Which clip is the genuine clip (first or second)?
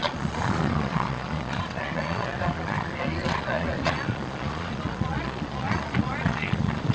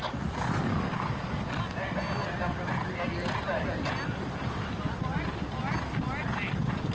second